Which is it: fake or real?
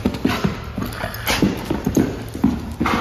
real